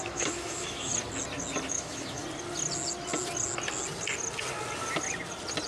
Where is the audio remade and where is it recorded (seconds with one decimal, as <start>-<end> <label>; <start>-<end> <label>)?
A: 0.0-0.9 remade; 0.9-1.7 recorded; 1.7-2.2 remade; 2.2-5.7 recorded